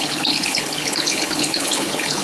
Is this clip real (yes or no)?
no